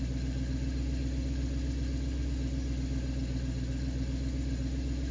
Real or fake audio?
real